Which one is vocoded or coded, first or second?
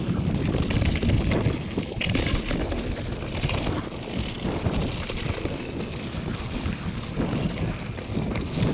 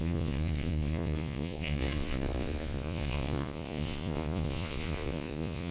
second